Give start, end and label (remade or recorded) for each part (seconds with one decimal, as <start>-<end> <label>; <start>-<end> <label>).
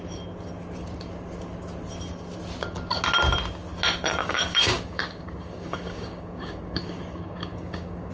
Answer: 0.0-4.2 recorded; 4.2-8.1 remade